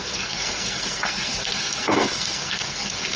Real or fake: fake